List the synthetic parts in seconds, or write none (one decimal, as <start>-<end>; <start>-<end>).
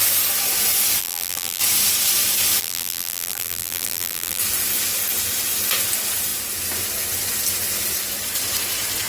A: 1.0-1.6; 2.6-4.4